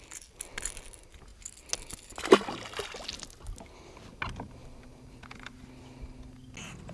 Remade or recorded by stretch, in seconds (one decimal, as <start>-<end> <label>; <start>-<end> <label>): 0.0-6.9 recorded